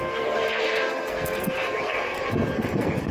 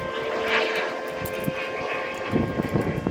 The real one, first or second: second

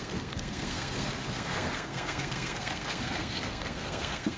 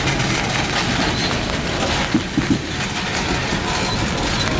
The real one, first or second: second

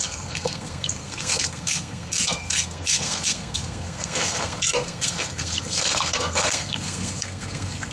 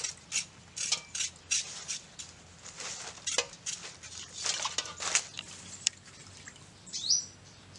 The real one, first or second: second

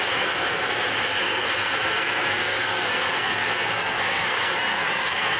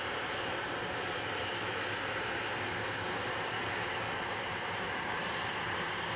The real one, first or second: second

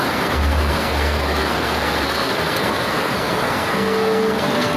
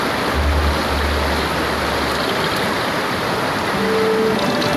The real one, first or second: second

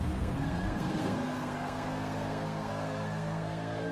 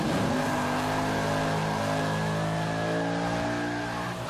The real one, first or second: second